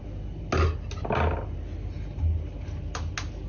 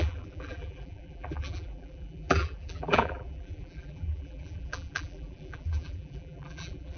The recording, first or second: first